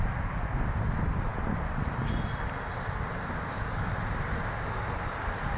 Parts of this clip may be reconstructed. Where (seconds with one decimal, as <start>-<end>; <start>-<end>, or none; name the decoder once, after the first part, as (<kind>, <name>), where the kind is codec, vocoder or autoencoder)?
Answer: none